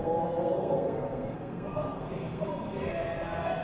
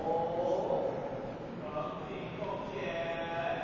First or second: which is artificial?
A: first